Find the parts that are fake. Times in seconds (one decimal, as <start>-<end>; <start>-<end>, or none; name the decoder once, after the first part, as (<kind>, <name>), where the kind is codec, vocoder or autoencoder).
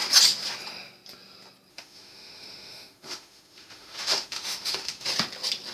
1.7-5.1 (autoencoder, DAC-VAE)